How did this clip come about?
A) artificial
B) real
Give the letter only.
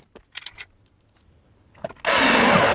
B